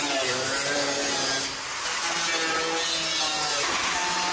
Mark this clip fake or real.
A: real